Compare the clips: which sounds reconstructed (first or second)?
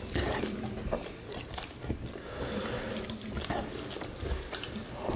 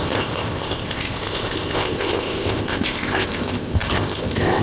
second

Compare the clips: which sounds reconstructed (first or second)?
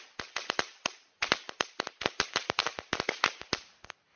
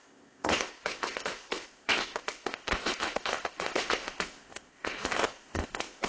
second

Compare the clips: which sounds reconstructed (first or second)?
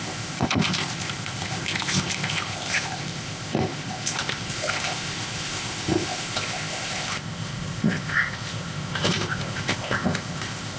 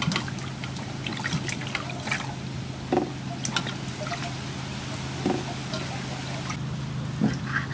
first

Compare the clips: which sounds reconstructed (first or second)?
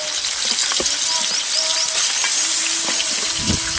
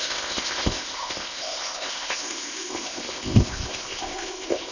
second